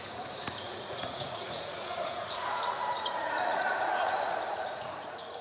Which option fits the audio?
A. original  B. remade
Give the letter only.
B